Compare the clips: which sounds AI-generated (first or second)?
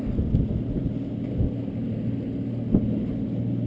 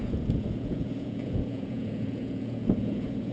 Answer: second